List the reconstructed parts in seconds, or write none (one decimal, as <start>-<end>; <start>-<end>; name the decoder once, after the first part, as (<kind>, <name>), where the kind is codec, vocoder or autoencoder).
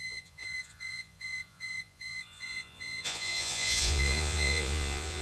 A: 0.0-5.2 (vocoder, Vocos)